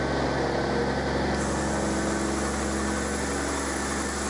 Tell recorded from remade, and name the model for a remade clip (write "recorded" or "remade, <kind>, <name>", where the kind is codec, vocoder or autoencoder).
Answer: recorded